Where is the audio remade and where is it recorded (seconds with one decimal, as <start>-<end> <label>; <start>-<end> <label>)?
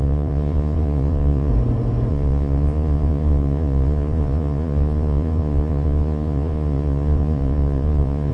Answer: 0.0-1.5 remade; 1.5-2.1 recorded; 2.1-8.3 remade